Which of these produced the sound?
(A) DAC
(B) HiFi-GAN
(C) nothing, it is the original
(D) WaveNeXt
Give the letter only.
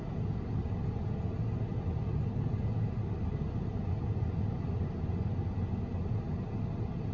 C